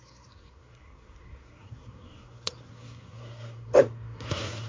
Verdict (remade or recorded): remade